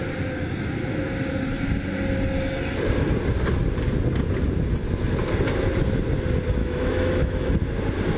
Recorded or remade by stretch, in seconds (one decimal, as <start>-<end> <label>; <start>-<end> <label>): 0.0-6.6 recorded; 6.6-7.5 remade; 7.5-8.2 recorded